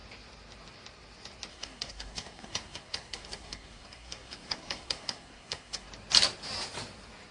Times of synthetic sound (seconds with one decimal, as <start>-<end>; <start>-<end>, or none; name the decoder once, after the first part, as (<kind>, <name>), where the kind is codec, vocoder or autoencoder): 1.5-5.9 (codec, SNAC)